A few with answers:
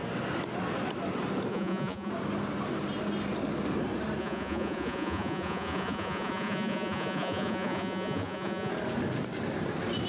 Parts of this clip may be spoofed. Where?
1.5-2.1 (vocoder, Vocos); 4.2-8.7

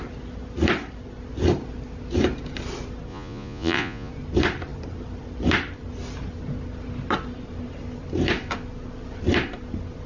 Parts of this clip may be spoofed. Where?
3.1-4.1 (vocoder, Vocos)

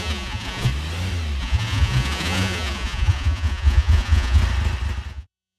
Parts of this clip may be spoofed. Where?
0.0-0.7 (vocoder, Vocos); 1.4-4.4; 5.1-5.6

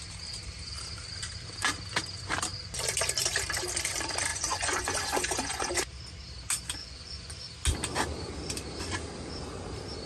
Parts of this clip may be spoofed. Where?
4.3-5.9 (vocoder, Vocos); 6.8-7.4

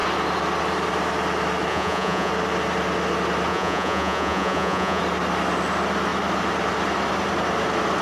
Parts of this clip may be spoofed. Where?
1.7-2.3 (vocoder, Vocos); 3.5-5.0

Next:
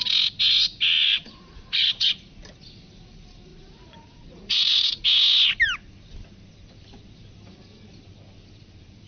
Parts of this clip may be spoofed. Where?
1.1-1.9 (vocoder, Vocos); 3.5-5.0